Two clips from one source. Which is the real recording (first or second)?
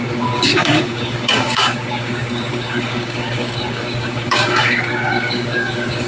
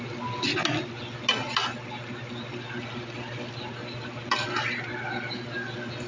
second